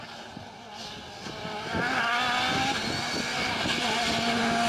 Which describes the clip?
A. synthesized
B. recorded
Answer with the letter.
B